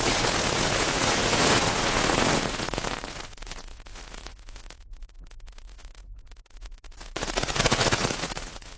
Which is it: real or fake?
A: fake